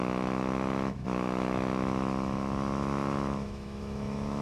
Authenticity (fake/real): fake